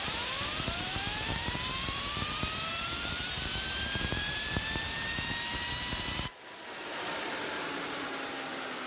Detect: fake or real fake